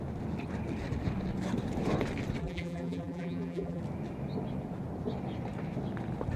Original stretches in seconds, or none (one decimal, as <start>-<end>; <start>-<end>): 0.0-2.4; 3.8-6.4